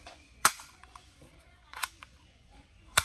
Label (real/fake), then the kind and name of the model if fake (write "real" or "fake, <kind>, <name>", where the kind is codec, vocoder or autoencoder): fake, vocoder, Vocos